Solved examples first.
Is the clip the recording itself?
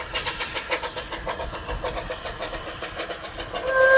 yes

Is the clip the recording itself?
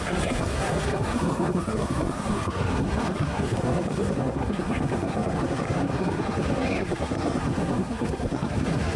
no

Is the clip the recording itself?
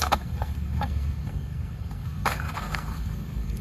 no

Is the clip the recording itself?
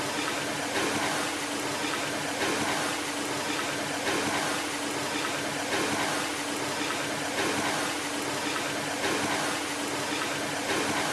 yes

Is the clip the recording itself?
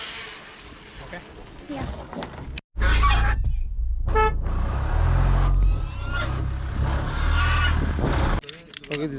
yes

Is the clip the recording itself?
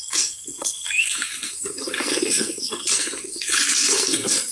no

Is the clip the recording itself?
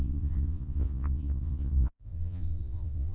no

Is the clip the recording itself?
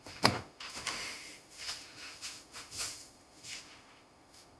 no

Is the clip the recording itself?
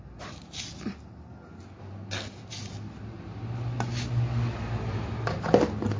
yes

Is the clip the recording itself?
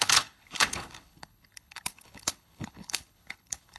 no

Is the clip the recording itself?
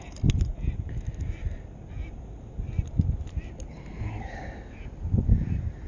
yes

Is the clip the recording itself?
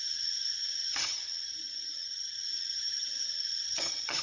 no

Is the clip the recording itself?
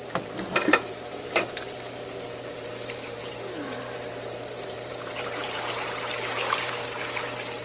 no